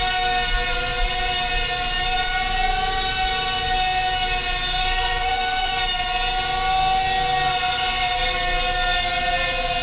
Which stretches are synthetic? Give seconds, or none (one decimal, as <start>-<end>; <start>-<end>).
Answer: 4.8-5.7